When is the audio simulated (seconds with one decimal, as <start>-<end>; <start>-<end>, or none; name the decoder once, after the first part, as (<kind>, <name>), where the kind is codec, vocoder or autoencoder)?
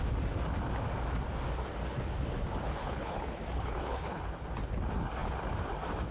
2.8-4.2 (codec, HILCodec)